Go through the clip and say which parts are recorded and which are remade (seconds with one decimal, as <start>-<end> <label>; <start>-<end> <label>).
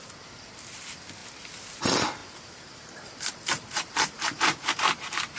0.0-2.2 recorded; 2.2-5.4 remade